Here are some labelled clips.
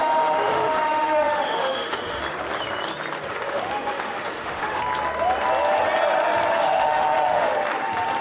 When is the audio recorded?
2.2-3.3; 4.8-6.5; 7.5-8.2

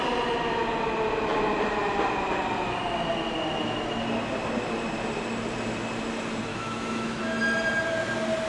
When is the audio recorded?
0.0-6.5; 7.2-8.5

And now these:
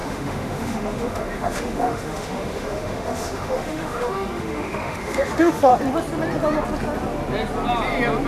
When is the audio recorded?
5.7-8.3

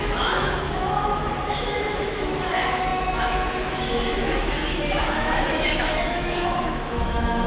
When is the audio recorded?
none